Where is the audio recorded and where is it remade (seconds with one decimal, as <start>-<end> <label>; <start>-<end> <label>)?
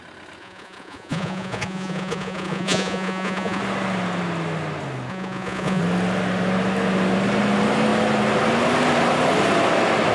0.0-0.4 recorded; 0.4-3.6 remade; 3.6-5.1 recorded; 5.1-5.8 remade; 5.8-10.1 recorded